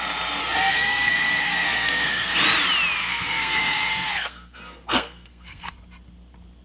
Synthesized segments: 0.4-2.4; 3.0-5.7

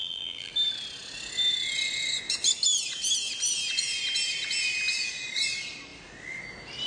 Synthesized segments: 0.0-0.5

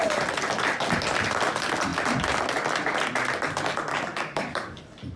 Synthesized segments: 3.9-4.8

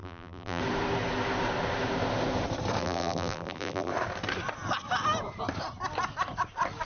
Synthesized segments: 0.0-0.6; 2.8-3.9

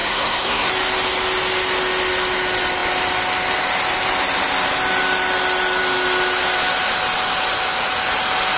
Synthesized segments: 0.0-0.7

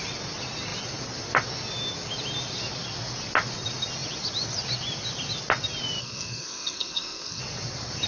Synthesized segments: 6.0-7.4